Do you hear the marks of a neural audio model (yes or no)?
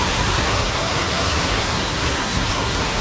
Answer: yes